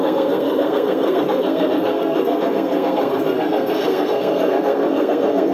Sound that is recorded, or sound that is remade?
remade